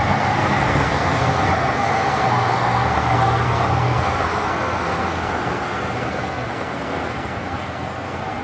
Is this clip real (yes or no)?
no